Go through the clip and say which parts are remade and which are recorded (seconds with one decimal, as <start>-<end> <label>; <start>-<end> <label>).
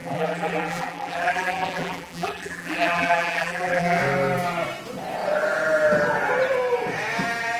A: 0.0-4.0 remade; 4.0-7.6 recorded